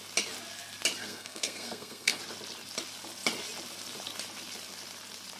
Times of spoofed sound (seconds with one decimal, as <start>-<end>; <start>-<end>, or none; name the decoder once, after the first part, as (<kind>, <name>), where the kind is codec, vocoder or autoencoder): 1.0-2.2 (codec, SNAC)